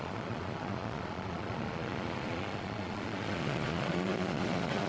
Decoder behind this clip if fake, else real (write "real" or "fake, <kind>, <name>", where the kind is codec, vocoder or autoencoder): fake, vocoder, Vocos